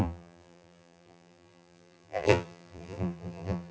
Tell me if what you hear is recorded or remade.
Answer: remade